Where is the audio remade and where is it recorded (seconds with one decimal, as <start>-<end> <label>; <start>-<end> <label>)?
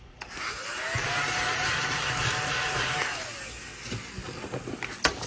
0.0-3.7 remade; 3.7-4.6 recorded; 4.6-5.3 remade